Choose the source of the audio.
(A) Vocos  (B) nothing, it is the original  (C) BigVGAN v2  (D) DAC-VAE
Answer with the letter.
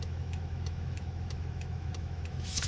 D